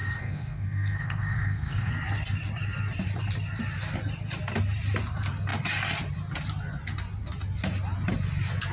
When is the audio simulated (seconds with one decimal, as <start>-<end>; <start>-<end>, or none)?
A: 0.0-1.9